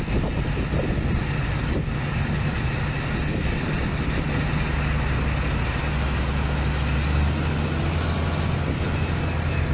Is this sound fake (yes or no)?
no